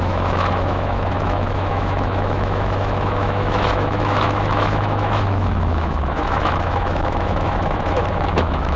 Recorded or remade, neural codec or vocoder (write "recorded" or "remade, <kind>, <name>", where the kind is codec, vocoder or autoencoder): remade, autoencoder, DAC-VAE